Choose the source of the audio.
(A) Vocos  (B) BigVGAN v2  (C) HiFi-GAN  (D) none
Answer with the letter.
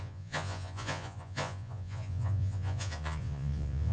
A